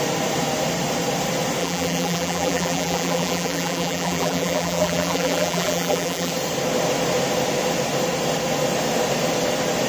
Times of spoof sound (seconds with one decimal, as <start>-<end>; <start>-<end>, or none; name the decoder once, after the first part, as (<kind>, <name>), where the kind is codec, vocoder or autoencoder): 1.6-6.3 (vocoder, BigVGAN v2)